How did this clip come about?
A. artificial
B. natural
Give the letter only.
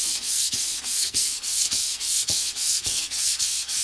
A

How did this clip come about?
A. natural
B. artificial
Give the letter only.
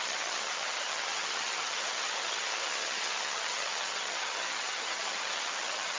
B